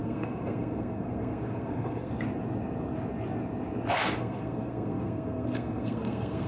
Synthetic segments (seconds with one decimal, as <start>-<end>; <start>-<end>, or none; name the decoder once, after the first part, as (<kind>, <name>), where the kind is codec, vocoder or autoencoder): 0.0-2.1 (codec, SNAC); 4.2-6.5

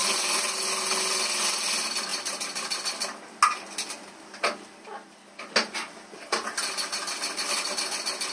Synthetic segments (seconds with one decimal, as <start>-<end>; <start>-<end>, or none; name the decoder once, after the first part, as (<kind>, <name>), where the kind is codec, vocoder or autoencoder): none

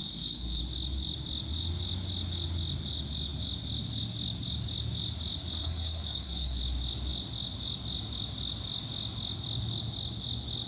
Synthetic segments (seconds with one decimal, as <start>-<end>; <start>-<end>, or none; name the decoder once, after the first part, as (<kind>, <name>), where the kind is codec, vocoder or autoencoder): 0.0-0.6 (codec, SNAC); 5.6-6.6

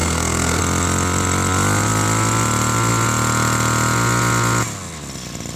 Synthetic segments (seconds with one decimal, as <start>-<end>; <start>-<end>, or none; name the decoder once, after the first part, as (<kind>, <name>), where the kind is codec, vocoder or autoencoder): 0.0-0.6 (codec, SNAC)